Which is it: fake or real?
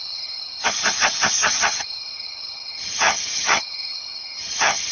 fake